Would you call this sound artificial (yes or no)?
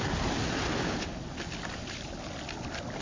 no